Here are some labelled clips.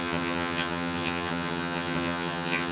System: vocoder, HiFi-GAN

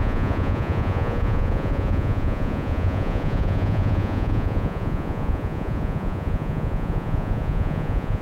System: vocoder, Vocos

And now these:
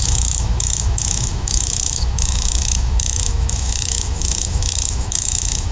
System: autoencoder, DAC-VAE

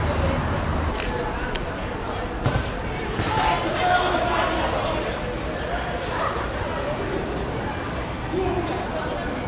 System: none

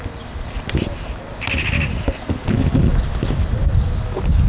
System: none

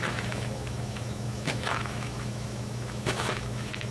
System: autoencoder, DAC-VAE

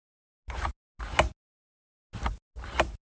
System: none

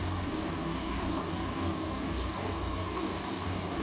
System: codec, DAC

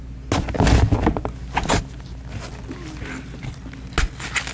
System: none